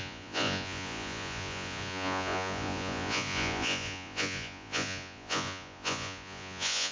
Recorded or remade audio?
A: remade